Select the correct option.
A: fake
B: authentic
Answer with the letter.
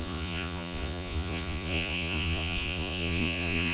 A